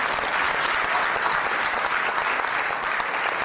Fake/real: real